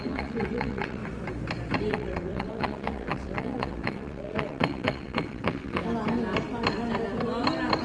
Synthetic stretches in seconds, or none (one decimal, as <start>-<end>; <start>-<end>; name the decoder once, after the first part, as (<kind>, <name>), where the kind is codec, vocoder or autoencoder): 0.0-1.0 (vocoder, WaveNeXt); 1.9-5.8